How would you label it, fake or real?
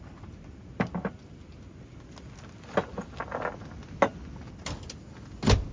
real